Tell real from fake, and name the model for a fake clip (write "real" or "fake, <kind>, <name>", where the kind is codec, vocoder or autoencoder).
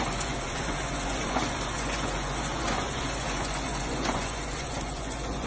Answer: fake, vocoder, Vocos